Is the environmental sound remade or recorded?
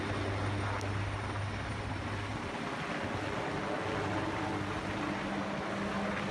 recorded